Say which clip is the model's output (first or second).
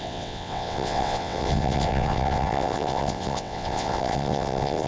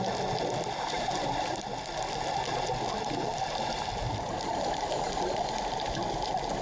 first